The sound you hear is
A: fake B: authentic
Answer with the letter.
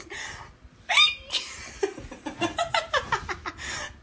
B